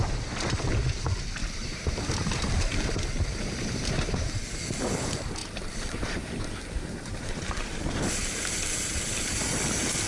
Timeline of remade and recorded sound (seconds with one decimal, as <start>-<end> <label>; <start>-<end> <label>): 0.0-1.4 recorded; 1.4-3.9 remade; 3.9-5.4 recorded; 5.4-9.6 remade; 9.6-10.1 recorded